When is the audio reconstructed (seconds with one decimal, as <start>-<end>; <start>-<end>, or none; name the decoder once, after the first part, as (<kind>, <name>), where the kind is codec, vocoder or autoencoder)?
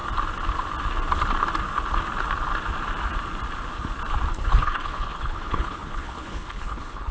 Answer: 4.3-7.1 (codec, HILCodec)